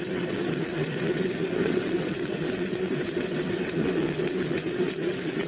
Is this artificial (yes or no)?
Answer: yes